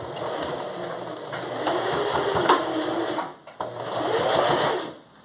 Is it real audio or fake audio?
real